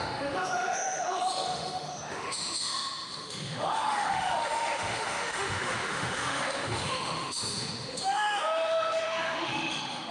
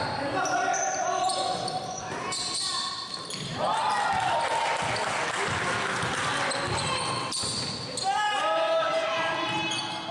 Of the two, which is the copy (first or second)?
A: first